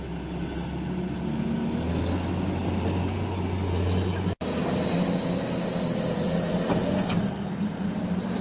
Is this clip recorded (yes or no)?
yes